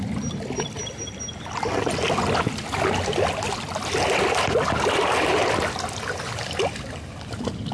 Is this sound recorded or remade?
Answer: recorded